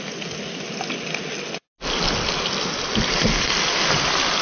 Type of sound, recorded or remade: recorded